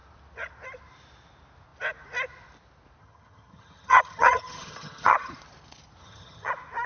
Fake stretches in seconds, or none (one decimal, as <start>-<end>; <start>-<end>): 3.0-5.3; 6.0-6.5